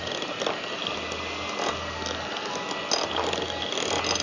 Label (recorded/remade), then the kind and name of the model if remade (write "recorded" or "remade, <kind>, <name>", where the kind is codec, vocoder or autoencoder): recorded